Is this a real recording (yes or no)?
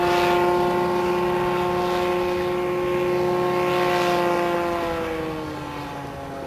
yes